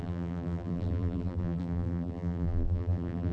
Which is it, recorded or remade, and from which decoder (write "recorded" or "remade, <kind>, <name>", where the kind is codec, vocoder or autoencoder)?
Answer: remade, vocoder, BigVGAN v2